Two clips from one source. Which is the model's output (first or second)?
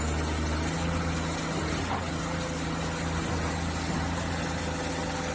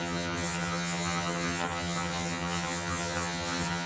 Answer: second